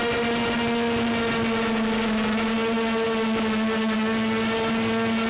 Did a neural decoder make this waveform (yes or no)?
no